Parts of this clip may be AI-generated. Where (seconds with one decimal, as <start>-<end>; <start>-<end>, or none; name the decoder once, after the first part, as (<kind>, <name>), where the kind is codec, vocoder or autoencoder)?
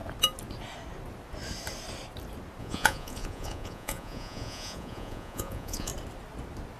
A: 2.6-5.9 (vocoder, Vocos)